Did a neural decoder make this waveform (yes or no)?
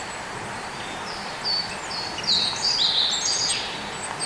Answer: no